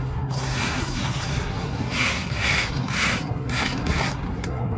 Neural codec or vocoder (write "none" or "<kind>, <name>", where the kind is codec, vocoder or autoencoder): codec, SNAC